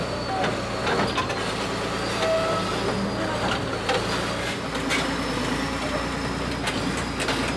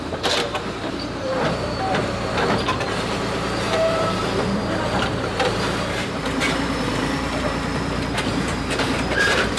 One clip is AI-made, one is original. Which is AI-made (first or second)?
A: second